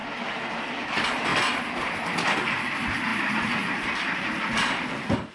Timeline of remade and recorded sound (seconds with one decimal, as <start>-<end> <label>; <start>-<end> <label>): 0.0-0.8 recorded; 0.8-1.3 remade; 1.3-1.8 recorded; 1.8-5.3 remade